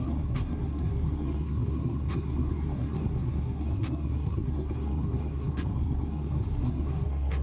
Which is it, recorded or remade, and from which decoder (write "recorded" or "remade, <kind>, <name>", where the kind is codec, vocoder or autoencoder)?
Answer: remade, codec, SNAC